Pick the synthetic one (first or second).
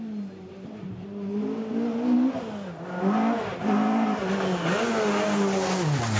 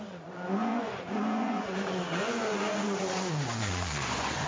second